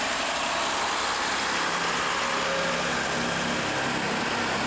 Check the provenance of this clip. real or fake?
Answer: real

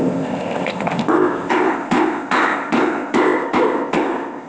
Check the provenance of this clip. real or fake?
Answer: fake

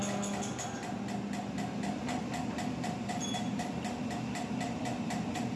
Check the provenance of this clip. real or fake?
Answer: real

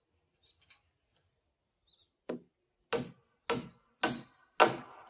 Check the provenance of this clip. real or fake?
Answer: real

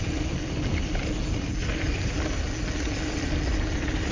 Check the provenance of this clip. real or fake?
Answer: real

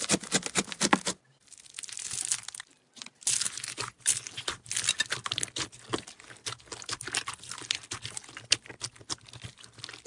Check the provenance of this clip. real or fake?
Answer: real